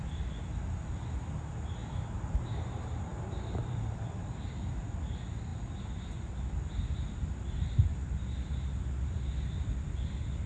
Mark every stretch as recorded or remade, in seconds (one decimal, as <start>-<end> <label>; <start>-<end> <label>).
0.0-1.8 recorded; 1.8-2.4 remade; 2.4-3.1 recorded; 3.1-4.8 remade; 4.8-10.5 recorded